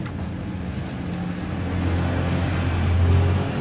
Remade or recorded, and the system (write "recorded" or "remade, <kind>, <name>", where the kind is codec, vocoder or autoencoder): recorded